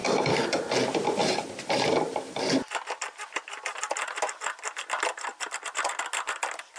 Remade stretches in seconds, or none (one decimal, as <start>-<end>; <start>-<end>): 0.0-0.6; 1.2-3.8

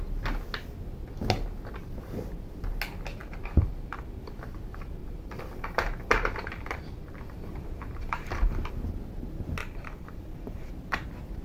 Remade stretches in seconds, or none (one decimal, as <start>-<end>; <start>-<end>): 3.2-4.4; 5.0-8.7; 9.6-10.7

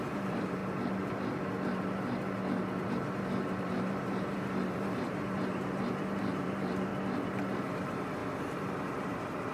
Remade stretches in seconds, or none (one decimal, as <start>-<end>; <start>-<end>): 0.0-0.6; 2.9-6.9; 7.6-9.5